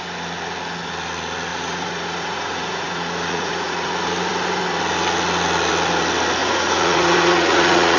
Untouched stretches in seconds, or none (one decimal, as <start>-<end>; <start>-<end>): 0.0-1.5; 3.9-6.4